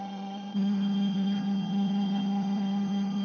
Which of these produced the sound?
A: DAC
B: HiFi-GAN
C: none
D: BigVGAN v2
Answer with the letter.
B